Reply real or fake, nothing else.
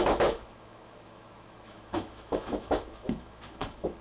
fake